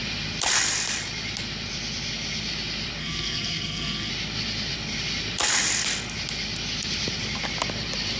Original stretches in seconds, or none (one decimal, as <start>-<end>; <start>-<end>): 0.0-3.0; 4.1-8.2